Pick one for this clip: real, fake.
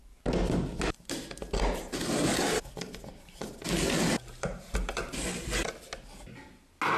real